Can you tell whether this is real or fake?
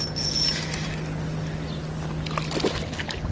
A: real